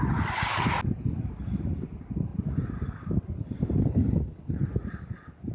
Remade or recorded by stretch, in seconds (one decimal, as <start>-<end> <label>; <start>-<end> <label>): 0.0-3.8 recorded; 3.8-4.7 remade; 4.7-5.5 recorded